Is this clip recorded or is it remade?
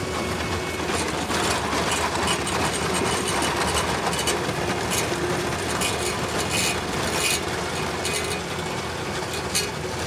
recorded